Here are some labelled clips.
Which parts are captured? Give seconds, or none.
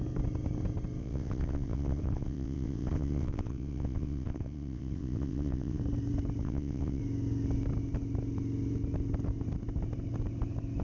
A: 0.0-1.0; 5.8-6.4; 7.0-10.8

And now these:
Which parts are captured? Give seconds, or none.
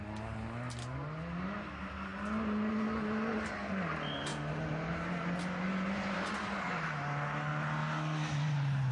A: 0.0-8.9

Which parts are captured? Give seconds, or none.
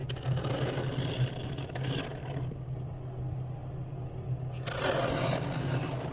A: 0.0-6.1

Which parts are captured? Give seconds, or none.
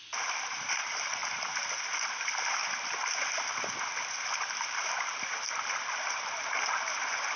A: 0.0-7.4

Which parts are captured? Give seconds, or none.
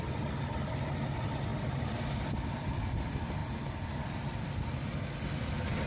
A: 0.0-5.9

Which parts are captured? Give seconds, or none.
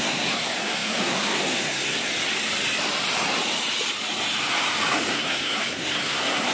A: 2.1-5.1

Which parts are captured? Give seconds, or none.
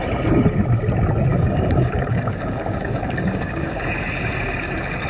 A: 0.0-1.3; 3.8-5.1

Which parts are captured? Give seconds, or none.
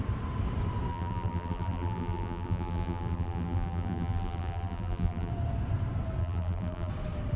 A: 0.0-0.9; 5.3-6.2; 6.9-7.4